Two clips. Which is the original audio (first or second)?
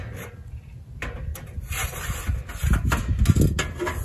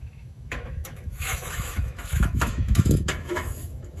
first